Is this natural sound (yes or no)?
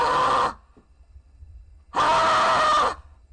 yes